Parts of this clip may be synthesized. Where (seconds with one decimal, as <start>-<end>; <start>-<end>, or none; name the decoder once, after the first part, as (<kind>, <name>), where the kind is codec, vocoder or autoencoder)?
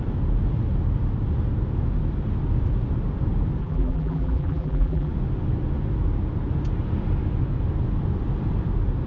3.6-5.1 (vocoder, BigVGAN v2)